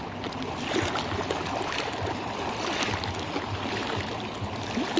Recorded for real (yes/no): yes